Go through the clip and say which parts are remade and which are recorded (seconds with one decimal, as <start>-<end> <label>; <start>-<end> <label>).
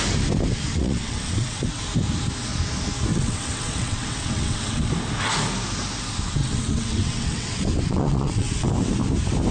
0.0-0.7 recorded; 0.7-1.8 remade; 1.8-3.1 recorded; 3.1-4.9 remade; 4.9-6.4 recorded; 6.4-8.7 remade; 8.7-9.5 recorded